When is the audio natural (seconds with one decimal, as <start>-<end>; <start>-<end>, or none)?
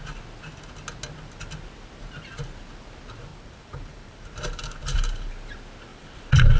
0.0-3.3; 5.3-5.9